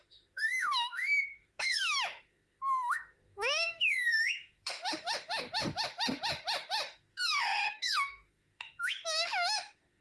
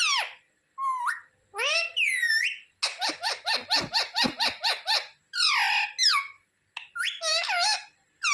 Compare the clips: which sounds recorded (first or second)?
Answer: second